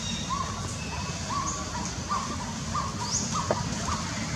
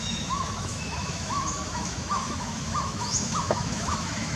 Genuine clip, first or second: first